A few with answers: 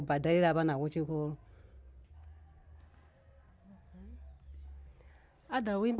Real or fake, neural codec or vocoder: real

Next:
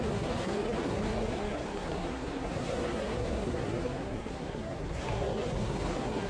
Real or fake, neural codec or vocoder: fake, codec, SNAC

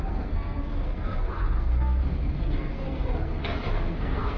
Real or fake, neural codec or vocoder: fake, codec, SNAC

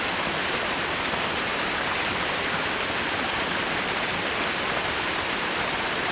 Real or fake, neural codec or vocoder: real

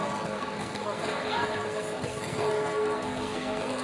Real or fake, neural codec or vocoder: fake, codec, SNAC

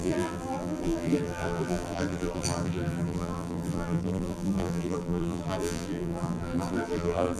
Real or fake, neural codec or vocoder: fake, vocoder, BigVGAN v2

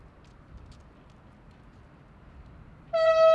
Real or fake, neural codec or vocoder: real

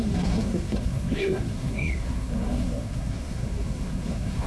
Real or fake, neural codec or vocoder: fake, codec, SNAC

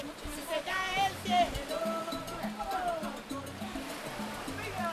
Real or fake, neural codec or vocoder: real